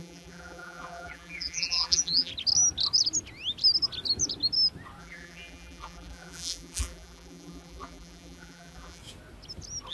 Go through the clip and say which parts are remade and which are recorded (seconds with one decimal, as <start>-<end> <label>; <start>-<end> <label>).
0.0-2.3 remade; 2.3-5.0 recorded; 5.0-9.0 remade; 9.0-9.9 recorded